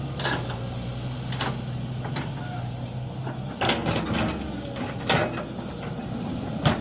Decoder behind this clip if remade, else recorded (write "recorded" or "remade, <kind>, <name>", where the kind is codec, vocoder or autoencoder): recorded